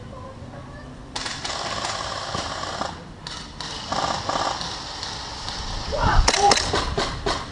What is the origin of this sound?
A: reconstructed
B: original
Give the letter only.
B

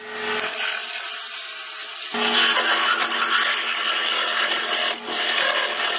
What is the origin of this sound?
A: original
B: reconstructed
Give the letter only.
A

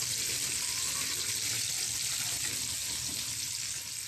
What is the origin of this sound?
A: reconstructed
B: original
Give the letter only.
B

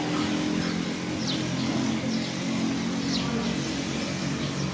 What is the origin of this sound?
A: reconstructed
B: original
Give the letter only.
B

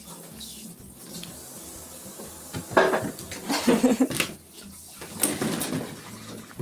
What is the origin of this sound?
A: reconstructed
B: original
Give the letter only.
B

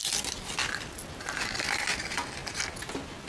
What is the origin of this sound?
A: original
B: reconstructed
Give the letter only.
A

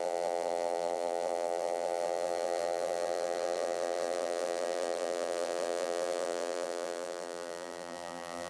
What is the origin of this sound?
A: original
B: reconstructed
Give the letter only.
B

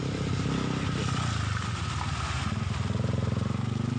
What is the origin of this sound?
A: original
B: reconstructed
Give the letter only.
A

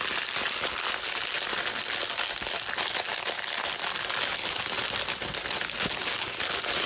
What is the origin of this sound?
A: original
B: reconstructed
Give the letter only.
A